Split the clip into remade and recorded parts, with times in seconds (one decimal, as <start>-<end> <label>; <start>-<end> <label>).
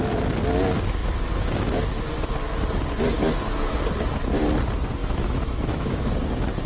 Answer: 0.0-5.0 recorded; 5.0-6.1 remade; 6.1-6.7 recorded